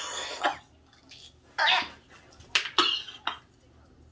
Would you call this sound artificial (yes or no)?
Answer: no